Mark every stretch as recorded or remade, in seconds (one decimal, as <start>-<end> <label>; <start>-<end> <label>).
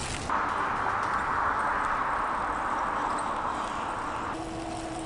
0.0-5.1 recorded